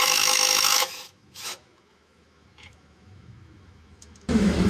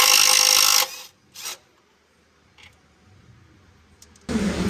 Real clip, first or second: second